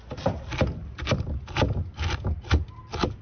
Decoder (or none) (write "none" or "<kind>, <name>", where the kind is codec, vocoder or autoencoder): none